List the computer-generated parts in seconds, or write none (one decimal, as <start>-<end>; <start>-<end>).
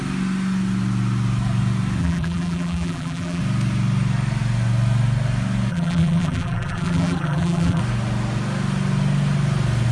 2.0-3.4; 5.7-7.8